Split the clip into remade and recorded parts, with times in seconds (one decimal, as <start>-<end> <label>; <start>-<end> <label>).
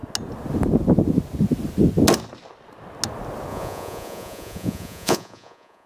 0.0-3.5 recorded; 3.5-5.9 remade